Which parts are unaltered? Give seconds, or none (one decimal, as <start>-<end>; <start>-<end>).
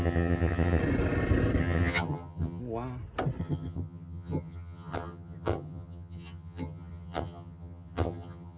0.8-1.6; 2.6-3.4